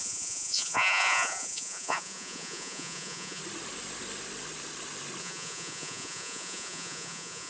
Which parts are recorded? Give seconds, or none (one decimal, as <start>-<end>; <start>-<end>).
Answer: 3.4-5.2